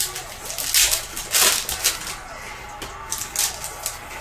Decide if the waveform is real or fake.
real